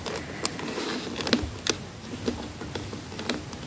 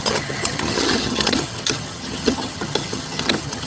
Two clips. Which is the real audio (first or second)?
first